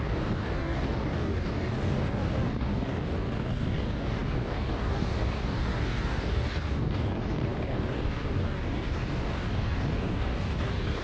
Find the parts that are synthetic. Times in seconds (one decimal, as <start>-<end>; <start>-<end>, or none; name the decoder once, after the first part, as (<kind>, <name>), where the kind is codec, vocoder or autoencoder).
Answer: 0.0-11.0 (codec, DAC)